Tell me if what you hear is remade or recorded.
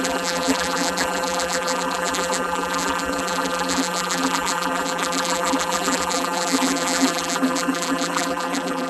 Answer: remade